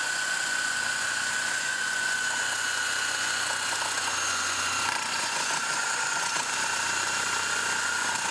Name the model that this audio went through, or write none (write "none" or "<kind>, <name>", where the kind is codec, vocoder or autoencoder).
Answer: vocoder, Vocos